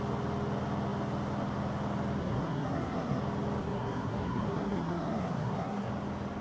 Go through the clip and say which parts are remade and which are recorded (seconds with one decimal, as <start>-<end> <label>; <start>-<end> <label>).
0.0-2.2 recorded; 2.2-3.2 remade; 3.2-3.6 recorded; 3.6-5.9 remade; 5.9-6.4 recorded